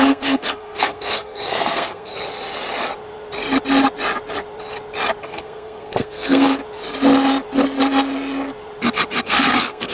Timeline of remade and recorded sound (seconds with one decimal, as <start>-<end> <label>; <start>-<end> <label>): 0.0-2.1 remade; 2.1-5.2 recorded; 5.2-6.6 remade; 6.6-9.2 recorded; 9.2-9.9 remade